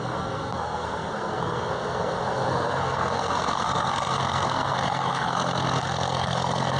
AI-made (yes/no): yes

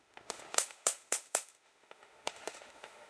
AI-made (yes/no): yes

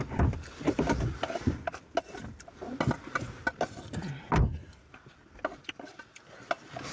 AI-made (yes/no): no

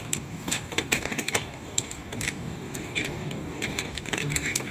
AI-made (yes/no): yes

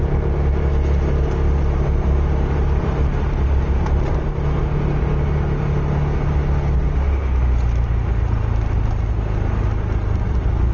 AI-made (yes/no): no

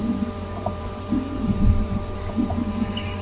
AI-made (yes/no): yes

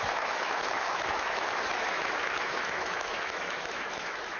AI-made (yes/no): yes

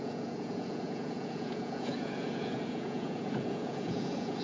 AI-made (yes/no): yes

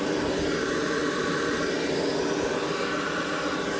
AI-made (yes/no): no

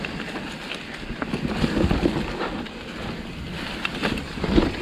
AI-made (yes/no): no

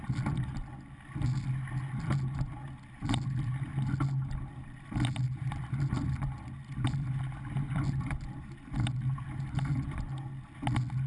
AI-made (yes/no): no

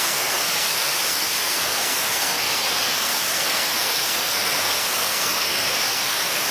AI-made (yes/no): yes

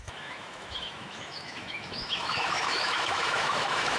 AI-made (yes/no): yes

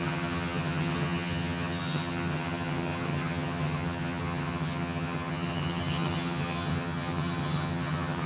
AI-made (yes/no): yes